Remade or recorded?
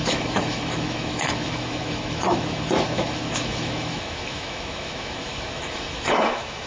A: remade